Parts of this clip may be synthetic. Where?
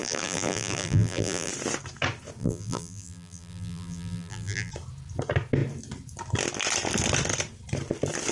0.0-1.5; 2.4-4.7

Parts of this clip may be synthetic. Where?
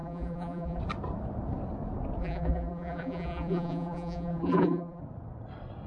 0.0-0.8; 2.2-5.0